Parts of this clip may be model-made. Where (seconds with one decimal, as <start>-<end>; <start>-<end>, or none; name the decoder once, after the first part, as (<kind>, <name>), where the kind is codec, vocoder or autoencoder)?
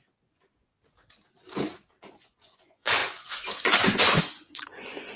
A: 0.0-0.7 (vocoder, Vocos); 2.0-5.2